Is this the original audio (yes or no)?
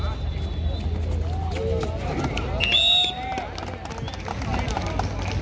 yes